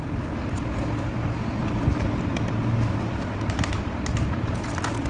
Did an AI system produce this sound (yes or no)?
no